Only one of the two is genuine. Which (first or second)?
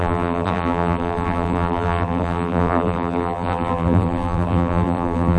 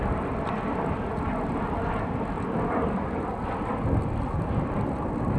second